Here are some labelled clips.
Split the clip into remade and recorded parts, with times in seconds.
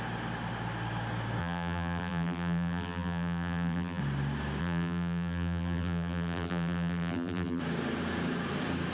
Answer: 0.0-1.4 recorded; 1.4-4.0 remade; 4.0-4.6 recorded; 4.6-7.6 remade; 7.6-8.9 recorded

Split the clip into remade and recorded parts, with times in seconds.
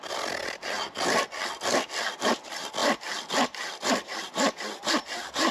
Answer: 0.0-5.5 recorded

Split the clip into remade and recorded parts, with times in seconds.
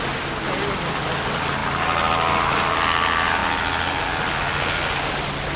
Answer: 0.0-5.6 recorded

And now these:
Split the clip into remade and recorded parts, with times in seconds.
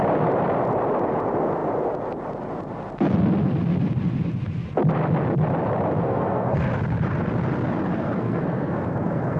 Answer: 0.0-6.0 recorded; 6.0-6.6 remade; 6.6-7.9 recorded; 7.9-9.4 remade